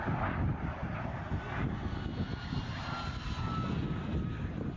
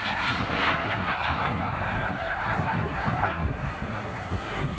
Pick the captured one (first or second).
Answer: first